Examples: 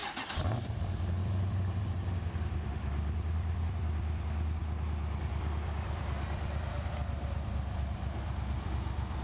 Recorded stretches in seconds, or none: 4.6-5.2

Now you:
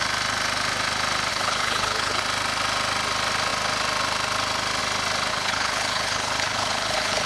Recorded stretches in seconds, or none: 0.0-1.3; 2.2-5.3

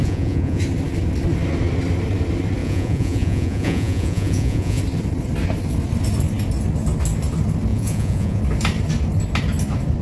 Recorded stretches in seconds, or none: 0.6-2.6; 4.8-7.7; 8.4-10.0

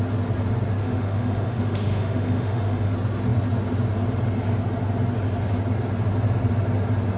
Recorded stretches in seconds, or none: 0.0-0.8; 2.9-7.2

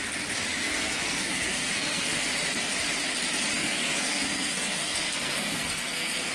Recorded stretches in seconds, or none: 0.0-0.6; 2.3-3.5